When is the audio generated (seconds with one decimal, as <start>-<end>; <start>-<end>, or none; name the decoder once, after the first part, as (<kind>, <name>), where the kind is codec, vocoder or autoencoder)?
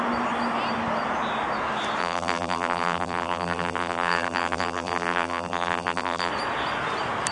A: 2.0-6.3 (vocoder, BigVGAN v2)